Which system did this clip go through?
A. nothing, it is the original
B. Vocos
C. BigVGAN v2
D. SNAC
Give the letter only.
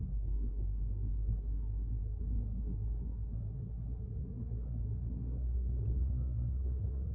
D